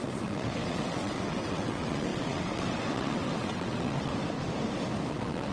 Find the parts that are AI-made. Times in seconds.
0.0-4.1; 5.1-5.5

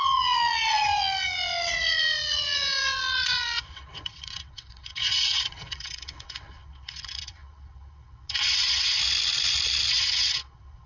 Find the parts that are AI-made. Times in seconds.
0.0-9.0; 9.9-10.9

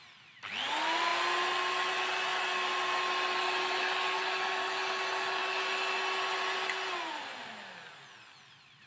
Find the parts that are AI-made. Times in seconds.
none

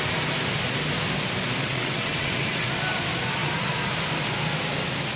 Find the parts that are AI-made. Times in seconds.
1.6-2.7

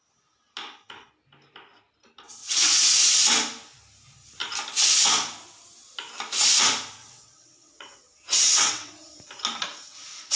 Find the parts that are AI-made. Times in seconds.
2.4-3.0; 7.0-8.9

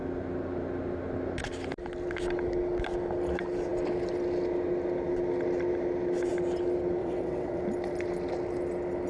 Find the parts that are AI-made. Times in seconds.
7.0-7.6

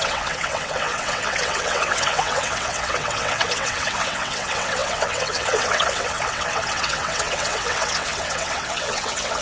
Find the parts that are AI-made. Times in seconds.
0.0-9.4